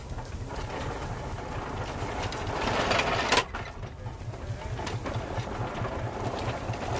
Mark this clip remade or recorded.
recorded